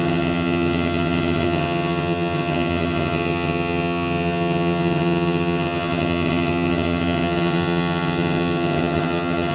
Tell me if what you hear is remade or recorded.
remade